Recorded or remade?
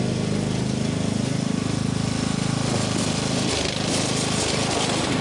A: recorded